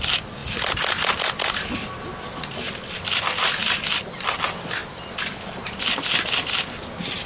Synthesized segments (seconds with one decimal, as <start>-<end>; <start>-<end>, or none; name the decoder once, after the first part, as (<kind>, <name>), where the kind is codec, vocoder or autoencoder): none